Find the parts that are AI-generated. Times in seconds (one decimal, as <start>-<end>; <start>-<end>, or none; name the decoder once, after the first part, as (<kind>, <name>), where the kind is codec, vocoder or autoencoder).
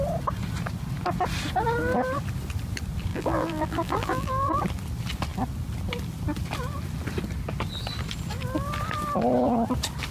3.1-4.6 (vocoder, BigVGAN v2)